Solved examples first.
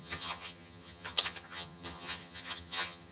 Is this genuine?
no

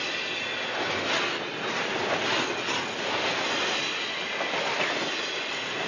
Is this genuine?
yes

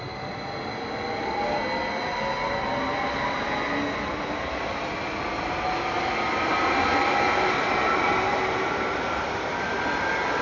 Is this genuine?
yes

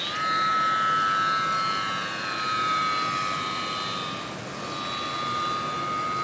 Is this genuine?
yes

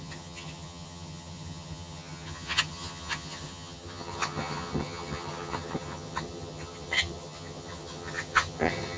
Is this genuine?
no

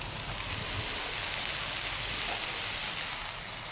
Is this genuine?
yes